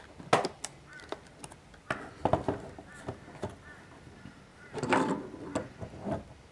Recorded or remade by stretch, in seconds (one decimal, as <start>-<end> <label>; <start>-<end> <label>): 0.0-4.5 recorded; 4.5-5.0 remade; 5.0-6.5 recorded